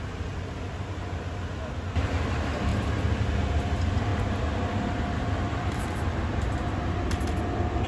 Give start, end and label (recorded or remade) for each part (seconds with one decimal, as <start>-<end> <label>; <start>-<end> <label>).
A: 0.0-7.9 recorded